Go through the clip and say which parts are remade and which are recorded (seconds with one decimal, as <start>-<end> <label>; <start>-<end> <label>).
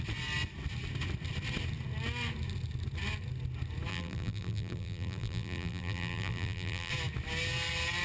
0.0-3.9 recorded; 3.9-6.9 remade; 6.9-8.0 recorded